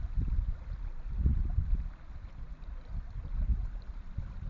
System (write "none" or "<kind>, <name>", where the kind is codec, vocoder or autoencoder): none